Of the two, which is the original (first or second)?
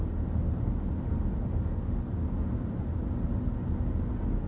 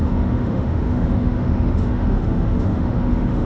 first